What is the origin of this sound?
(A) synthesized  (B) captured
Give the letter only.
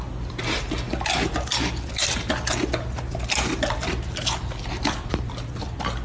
B